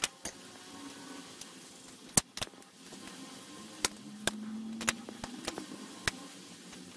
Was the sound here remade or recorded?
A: recorded